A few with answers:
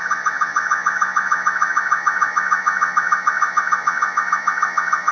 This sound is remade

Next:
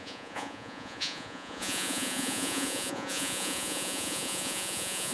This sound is remade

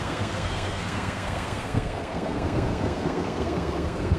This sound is remade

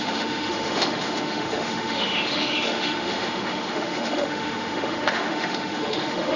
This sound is remade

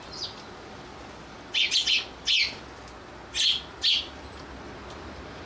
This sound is recorded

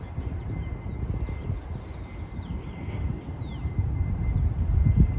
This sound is recorded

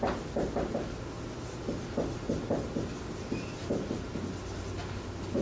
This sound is recorded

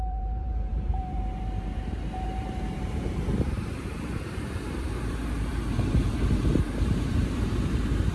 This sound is remade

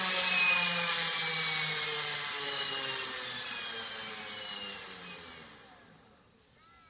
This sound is recorded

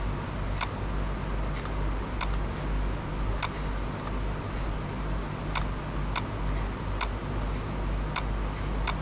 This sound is recorded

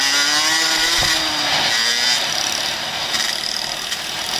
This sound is recorded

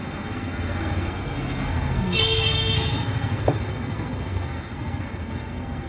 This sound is remade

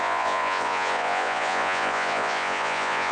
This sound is remade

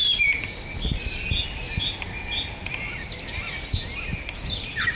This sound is recorded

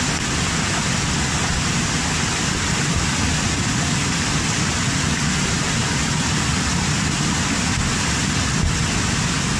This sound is recorded